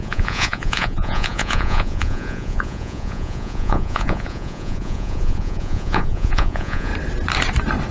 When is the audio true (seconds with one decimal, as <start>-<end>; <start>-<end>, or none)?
6.9-7.9